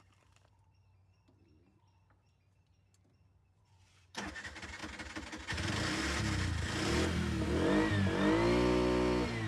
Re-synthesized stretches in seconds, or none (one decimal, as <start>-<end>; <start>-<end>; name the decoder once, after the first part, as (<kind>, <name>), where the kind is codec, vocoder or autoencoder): 3.4-4.3 (vocoder, Vocos)